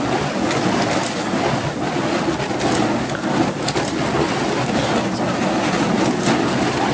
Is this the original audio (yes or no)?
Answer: yes